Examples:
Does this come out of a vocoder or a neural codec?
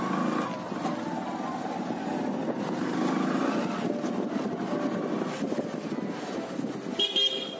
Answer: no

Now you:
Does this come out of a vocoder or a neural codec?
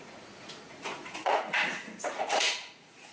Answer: yes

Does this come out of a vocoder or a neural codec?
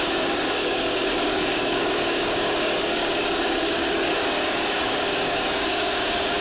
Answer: yes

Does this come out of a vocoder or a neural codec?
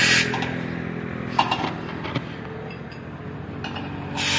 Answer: no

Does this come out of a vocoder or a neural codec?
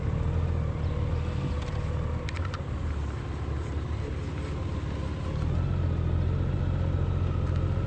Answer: no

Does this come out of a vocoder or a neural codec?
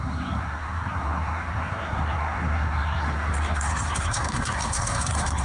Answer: yes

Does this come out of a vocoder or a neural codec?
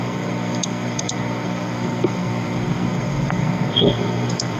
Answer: yes